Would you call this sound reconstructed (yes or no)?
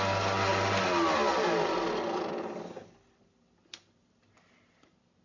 no